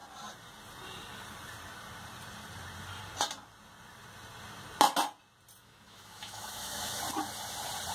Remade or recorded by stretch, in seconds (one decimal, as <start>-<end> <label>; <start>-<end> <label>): 0.0-5.6 recorded; 5.6-7.0 remade; 7.0-7.9 recorded

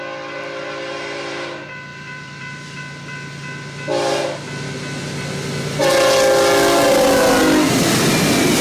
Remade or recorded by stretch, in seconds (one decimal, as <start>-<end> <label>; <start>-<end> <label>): 0.0-1.9 recorded; 1.9-2.8 remade; 2.8-8.6 recorded

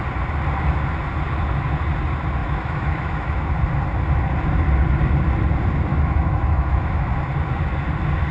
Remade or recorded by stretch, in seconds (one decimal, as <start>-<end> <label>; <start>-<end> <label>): 0.0-2.4 recorded; 2.4-3.5 remade; 3.5-5.9 recorded; 5.9-7.1 remade; 7.1-8.3 recorded